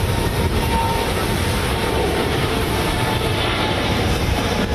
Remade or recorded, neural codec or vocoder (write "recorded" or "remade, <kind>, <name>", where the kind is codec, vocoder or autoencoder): remade, vocoder, BigVGAN v2